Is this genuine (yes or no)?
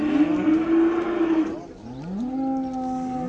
yes